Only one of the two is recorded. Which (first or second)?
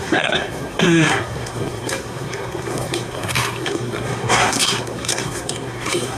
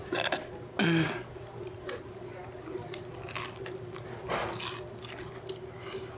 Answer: second